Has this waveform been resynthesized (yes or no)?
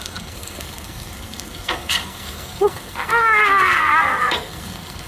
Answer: yes